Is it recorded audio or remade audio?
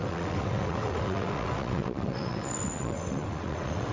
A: remade